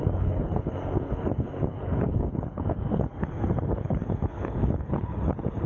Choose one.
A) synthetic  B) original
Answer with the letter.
A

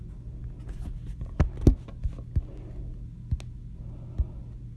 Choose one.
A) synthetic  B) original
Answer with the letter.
B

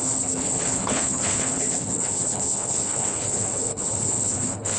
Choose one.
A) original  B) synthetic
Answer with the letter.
B